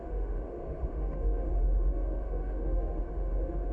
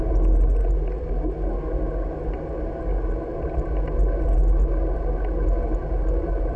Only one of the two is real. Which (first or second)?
second